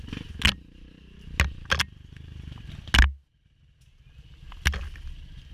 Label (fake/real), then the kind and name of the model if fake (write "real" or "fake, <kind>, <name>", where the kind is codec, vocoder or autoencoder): real